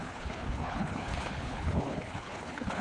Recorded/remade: remade